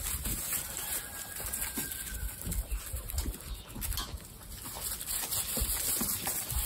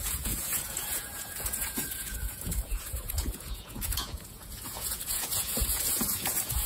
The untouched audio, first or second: first